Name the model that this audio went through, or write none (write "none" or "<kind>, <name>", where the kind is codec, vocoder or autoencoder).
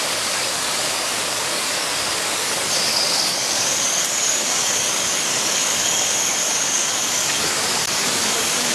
codec, DAC